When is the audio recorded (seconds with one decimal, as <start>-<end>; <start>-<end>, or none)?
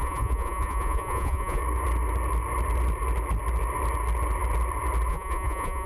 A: 1.6-5.1